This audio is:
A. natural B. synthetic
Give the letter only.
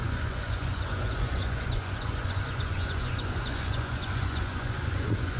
B